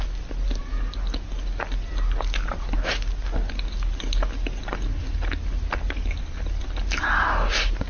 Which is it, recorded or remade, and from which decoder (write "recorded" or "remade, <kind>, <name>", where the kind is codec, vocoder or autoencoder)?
recorded